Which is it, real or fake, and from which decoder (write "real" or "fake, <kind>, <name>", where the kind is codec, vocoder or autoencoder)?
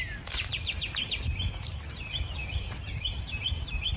fake, vocoder, BigVGAN v2